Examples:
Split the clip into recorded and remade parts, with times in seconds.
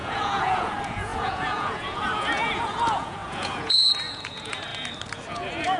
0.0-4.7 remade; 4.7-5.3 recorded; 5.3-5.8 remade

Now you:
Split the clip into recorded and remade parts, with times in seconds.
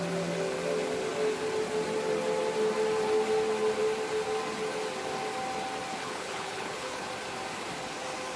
0.0-5.9 recorded; 5.9-7.1 remade; 7.1-8.4 recorded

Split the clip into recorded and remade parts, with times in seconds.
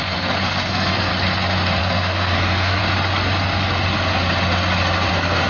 0.0-1.1 remade; 1.1-1.8 recorded; 1.8-2.8 remade; 2.8-5.1 recorded; 5.1-5.5 remade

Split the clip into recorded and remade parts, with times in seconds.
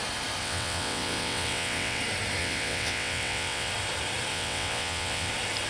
0.0-0.4 recorded; 0.4-2.0 remade; 2.0-2.4 recorded; 2.4-3.7 remade; 3.7-4.3 recorded; 4.3-5.3 remade; 5.3-5.7 recorded